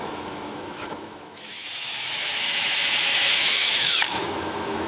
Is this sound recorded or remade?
remade